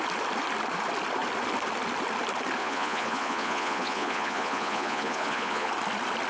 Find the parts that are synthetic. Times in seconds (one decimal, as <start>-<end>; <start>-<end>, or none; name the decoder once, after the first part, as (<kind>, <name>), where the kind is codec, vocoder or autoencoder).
2.6-5.7 (vocoder, Vocos)